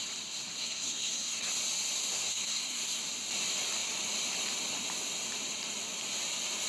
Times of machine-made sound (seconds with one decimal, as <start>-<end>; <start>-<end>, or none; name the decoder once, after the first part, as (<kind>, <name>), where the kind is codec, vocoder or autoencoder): 0.6-1.5 (codec, SNAC); 2.1-3.0